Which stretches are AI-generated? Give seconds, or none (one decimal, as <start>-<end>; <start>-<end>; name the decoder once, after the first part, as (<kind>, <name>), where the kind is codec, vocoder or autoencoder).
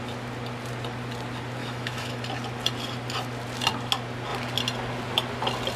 1.6-2.2 (autoencoder, DAC-VAE)